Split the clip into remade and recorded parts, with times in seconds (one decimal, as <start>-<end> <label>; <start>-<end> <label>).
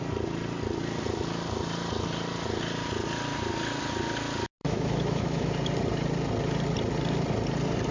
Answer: 0.0-4.6 recorded; 4.6-5.5 remade; 5.5-7.9 recorded